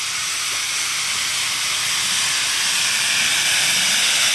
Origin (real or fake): real